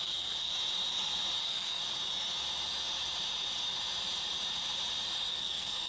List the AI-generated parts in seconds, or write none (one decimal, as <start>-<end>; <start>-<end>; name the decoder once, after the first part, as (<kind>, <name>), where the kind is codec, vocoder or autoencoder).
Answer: 0.0-0.5 (codec, SNAC); 1.4-1.8; 5.3-5.9